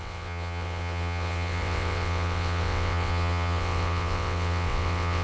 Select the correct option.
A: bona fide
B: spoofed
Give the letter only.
B